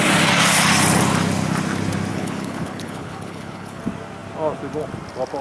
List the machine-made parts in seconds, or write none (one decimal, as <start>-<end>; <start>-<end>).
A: 2.1-3.8